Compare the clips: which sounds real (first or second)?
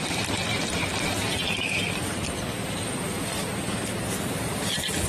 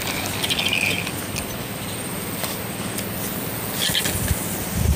second